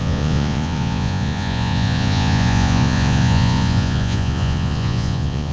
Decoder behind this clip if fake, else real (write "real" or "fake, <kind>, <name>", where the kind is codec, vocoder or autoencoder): fake, vocoder, Vocos